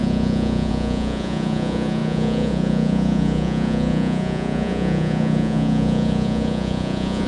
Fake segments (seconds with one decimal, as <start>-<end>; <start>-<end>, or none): 0.0-7.3